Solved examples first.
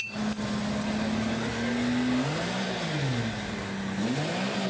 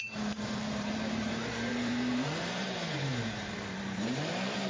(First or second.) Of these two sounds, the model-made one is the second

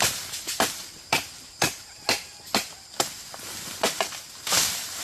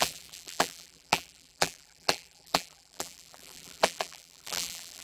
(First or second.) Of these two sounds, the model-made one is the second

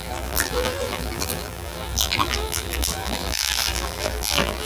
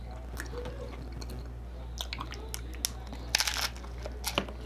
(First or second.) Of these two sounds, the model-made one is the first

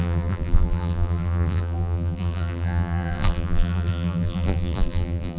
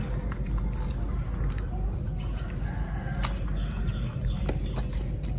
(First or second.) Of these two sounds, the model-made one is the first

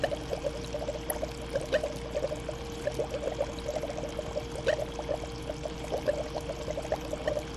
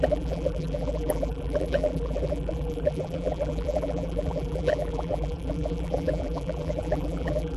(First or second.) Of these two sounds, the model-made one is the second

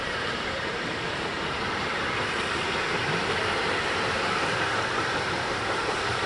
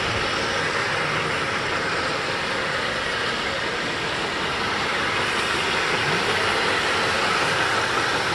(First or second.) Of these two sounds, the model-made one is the first